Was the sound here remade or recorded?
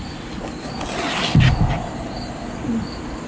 recorded